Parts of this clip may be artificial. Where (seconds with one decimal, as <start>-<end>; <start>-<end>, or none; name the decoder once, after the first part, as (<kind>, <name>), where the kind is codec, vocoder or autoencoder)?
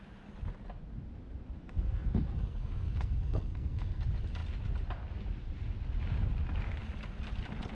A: 1.6-4.0 (codec, SNAC)